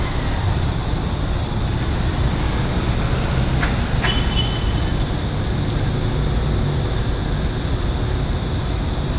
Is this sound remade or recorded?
recorded